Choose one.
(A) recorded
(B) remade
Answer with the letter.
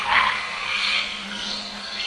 B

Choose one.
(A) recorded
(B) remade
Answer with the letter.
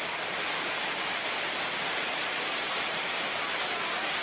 A